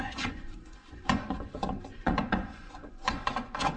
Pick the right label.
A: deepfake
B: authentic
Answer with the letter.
A